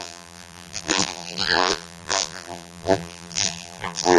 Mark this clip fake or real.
fake